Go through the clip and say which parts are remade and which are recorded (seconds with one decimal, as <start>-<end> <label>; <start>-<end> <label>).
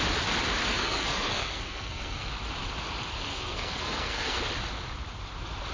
0.0-0.7 recorded; 0.7-2.3 remade; 2.3-3.3 recorded; 3.3-4.4 remade; 4.4-5.7 recorded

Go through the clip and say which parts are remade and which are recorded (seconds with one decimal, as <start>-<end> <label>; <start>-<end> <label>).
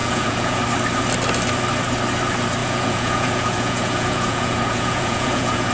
0.0-0.6 remade; 0.6-2.6 recorded; 2.6-5.7 remade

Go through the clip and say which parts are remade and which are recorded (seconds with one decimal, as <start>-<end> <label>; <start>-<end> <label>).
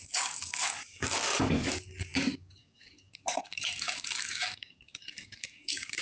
0.0-6.0 remade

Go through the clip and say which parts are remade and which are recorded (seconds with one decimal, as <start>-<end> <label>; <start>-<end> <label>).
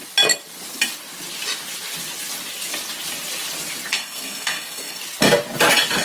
0.0-3.9 recorded; 3.9-5.0 remade; 5.0-6.0 recorded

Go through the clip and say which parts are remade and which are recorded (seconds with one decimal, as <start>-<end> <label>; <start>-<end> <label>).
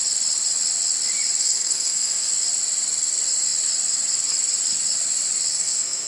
0.0-1.4 recorded; 1.4-2.3 remade; 2.3-5.5 recorded; 5.5-6.1 remade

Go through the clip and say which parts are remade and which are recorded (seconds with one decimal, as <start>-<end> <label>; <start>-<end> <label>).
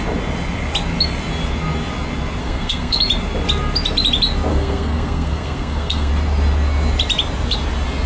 0.0-2.4 recorded; 2.4-3.0 remade; 3.0-4.5 recorded; 4.5-6.1 remade; 6.1-8.1 recorded